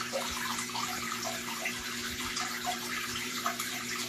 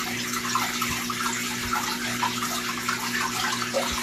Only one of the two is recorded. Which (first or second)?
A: second